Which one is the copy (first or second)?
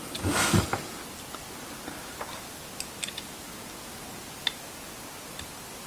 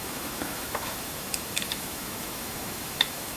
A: second